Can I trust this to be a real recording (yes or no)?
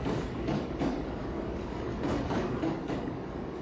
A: no